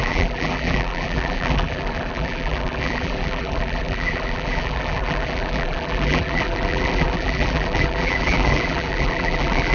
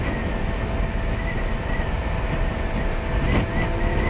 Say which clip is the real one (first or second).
second